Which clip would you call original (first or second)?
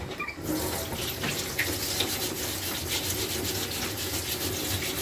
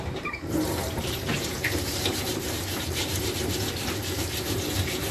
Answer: first